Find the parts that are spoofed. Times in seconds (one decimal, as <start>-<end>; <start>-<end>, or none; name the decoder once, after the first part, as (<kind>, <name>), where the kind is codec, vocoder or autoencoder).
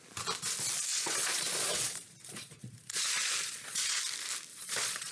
0.9-4.0 (vocoder, Vocos); 4.5-5.1